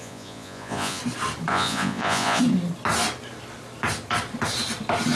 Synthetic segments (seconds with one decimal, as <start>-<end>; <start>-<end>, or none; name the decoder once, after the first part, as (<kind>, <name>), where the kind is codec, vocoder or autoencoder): 0.0-1.0 (vocoder, Vocos); 1.5-2.4